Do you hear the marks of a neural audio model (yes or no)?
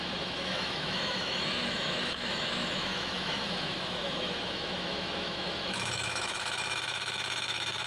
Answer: yes